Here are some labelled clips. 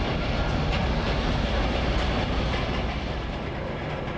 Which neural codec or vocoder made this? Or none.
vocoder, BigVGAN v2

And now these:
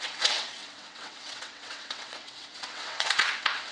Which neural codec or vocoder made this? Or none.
vocoder, WaveNeXt